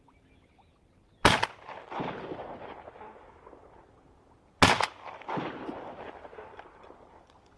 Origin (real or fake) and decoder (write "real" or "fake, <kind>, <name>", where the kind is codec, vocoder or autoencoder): real